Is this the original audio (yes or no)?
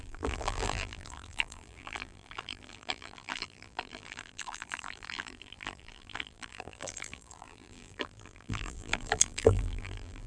no